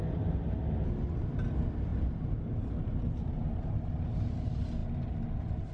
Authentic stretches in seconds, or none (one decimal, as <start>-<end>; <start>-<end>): 0.0-5.7